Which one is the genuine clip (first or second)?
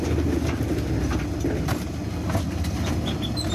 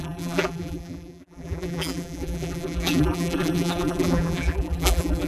first